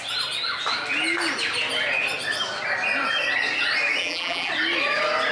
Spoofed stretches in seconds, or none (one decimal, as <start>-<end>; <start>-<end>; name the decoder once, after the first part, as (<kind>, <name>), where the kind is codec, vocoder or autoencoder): 4.0-4.5 (vocoder, BigVGAN v2)